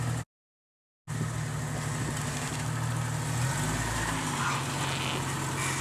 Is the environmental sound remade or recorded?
recorded